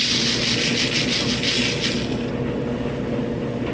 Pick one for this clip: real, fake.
real